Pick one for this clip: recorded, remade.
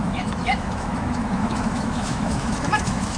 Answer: remade